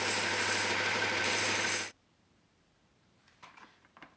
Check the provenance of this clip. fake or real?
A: fake